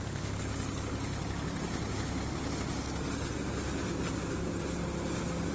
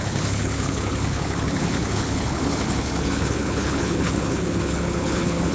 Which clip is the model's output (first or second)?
second